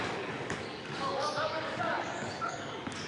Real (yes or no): no